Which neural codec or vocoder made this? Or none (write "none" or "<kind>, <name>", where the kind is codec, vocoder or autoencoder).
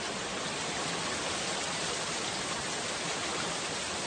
none